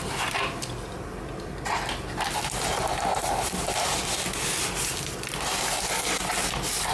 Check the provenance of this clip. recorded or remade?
recorded